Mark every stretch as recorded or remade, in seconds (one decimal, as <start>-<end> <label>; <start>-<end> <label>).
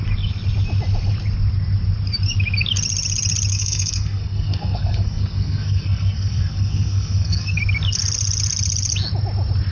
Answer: 0.0-3.5 recorded; 3.5-7.6 remade; 7.6-9.7 recorded